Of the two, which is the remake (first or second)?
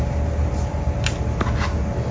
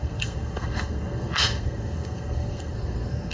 second